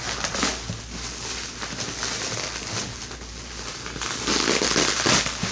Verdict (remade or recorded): recorded